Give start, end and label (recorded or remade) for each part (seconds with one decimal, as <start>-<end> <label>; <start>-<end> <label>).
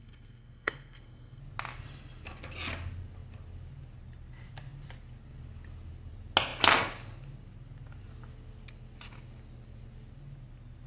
0.0-1.4 remade; 1.4-10.9 recorded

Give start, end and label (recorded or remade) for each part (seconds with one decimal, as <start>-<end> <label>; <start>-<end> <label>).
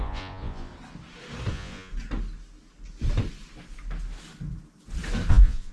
0.0-0.7 remade; 0.7-1.5 recorded; 1.5-1.9 remade; 1.9-5.3 recorded; 5.3-5.7 remade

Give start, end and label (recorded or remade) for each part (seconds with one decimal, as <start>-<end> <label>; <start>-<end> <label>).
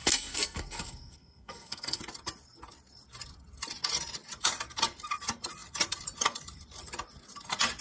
0.0-2.0 remade; 2.0-7.8 recorded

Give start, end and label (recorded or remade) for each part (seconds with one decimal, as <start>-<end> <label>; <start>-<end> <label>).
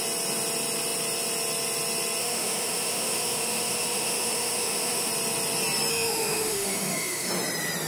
0.0-2.2 recorded; 2.2-5.1 remade; 5.1-5.9 recorded; 5.9-7.3 remade; 7.3-7.9 recorded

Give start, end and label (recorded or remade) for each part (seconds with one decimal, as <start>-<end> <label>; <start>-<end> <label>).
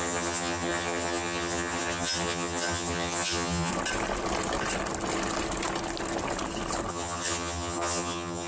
0.0-3.7 remade; 3.7-6.9 recorded; 6.9-8.5 remade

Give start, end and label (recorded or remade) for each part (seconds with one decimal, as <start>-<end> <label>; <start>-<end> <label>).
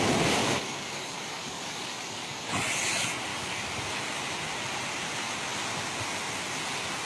0.0-0.4 recorded; 0.4-2.4 remade; 2.4-3.3 recorded; 3.3-3.8 remade; 3.8-7.1 recorded